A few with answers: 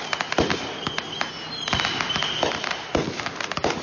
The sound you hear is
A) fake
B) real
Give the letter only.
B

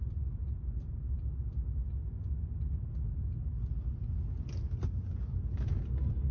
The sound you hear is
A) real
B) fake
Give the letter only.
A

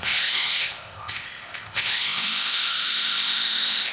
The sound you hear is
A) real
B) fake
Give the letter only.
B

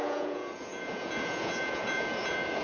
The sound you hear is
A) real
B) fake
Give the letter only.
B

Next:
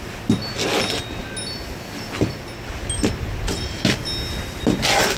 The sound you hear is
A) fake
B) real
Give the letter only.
B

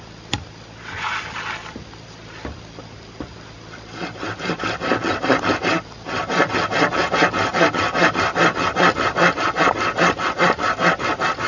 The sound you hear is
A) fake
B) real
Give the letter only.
B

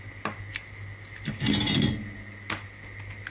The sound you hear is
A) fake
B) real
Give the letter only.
B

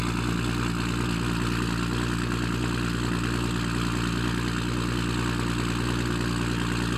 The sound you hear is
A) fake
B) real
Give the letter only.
B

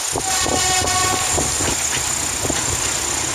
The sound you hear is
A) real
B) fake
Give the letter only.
A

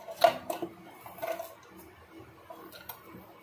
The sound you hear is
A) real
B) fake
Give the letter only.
A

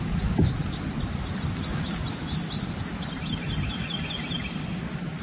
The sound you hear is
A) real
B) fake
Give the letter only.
A